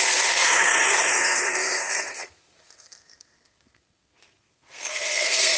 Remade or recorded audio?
remade